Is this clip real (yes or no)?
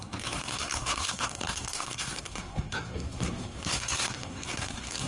no